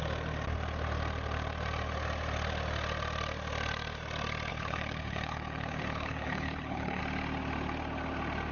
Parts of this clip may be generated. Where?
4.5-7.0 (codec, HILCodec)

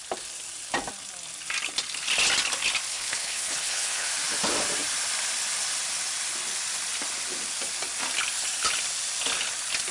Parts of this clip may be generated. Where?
2.9-4.1 (codec, HILCodec)

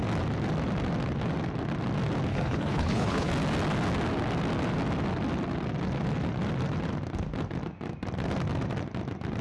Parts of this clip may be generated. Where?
2.3-3.3 (codec, HILCodec)

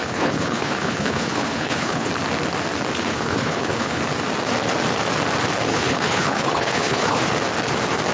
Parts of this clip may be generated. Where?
0.0-2.1 (codec, HILCodec); 3.1-4.0; 5.7-7.2

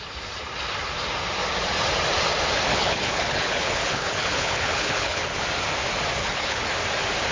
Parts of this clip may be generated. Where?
2.7-5.4 (codec, HILCodec); 6.2-6.7

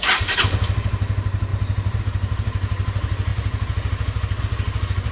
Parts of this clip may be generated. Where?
none